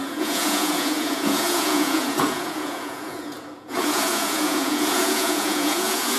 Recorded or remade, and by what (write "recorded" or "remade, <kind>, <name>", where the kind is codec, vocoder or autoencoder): remade, vocoder, Vocos